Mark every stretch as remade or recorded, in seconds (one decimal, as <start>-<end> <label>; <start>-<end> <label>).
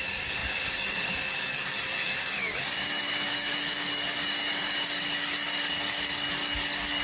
0.0-7.0 remade